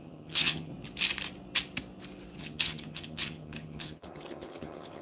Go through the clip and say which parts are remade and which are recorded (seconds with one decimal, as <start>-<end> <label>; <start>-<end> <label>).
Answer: 0.0-0.7 remade; 0.7-2.4 recorded; 2.4-5.0 remade